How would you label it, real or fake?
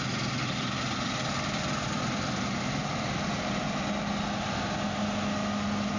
real